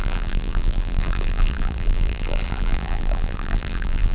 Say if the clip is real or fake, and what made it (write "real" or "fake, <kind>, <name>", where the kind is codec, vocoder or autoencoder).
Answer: fake, vocoder, BigVGAN v2